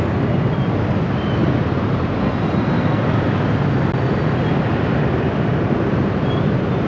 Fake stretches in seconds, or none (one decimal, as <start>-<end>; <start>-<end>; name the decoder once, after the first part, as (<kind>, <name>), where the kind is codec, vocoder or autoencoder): 2.2-3.0 (codec, SNAC)